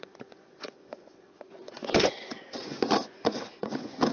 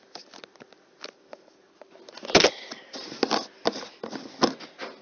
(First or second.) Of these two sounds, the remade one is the first